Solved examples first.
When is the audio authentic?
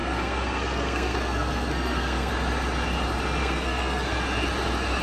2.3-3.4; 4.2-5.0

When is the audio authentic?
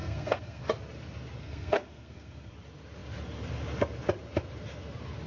0.6-1.4; 2.5-5.3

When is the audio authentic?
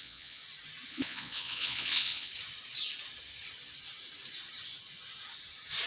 0.4-0.9; 2.3-5.9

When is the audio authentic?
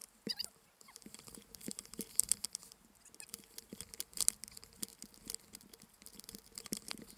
2.9-7.2